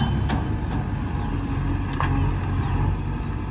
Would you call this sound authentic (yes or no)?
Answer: yes